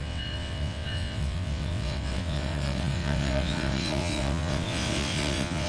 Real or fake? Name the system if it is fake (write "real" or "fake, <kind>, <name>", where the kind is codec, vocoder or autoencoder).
fake, vocoder, WaveNeXt